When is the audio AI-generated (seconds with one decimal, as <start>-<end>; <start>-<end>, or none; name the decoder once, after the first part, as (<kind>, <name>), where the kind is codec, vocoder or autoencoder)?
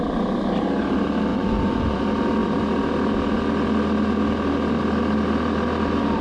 1.3-2.0 (vocoder, Vocos)